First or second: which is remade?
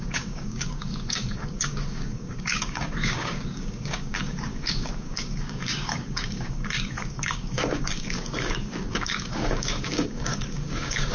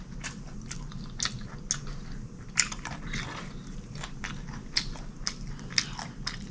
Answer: first